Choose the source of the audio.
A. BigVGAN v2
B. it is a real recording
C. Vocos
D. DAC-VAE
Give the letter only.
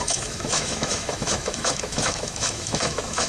D